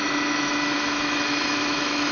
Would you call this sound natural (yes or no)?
no